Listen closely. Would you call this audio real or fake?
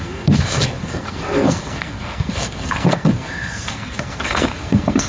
fake